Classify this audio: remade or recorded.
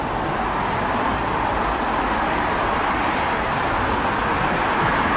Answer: recorded